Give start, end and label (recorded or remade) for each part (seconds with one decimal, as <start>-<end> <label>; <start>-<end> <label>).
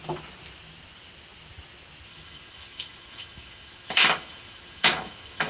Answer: 0.0-2.1 recorded; 2.1-5.5 remade